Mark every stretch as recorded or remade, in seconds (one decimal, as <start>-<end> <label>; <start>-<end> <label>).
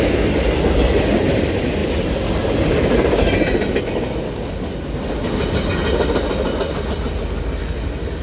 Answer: 0.0-8.2 recorded